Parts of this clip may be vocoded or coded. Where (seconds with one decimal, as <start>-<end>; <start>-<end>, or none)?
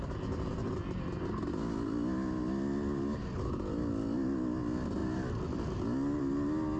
none